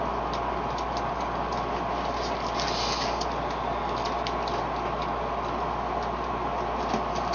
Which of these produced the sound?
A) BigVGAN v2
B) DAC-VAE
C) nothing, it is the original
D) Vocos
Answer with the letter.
C